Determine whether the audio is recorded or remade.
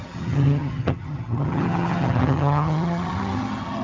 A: remade